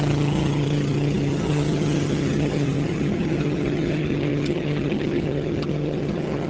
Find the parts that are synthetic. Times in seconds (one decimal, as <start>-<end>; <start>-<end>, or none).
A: 0.0-6.5